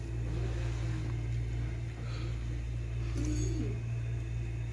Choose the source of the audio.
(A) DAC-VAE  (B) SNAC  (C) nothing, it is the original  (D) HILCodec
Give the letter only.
C